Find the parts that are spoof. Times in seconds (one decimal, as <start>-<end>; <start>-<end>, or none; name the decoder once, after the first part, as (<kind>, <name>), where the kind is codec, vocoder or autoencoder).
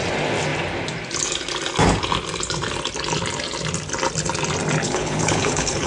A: 4.8-5.9 (codec, HILCodec)